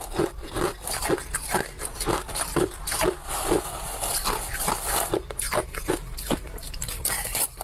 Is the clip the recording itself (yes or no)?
no